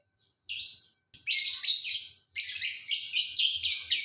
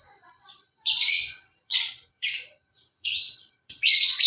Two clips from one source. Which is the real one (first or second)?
first